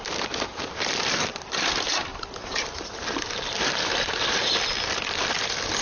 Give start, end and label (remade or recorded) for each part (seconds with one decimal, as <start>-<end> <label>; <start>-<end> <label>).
0.0-0.5 recorded; 0.5-1.5 remade; 1.5-2.1 recorded; 2.1-4.6 remade; 4.6-5.8 recorded